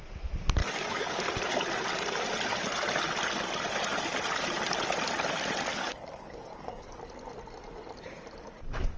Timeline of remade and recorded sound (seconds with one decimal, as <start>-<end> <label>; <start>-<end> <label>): 0.0-0.6 recorded; 0.6-1.2 remade; 1.2-5.7 recorded; 5.7-7.0 remade; 7.0-9.0 recorded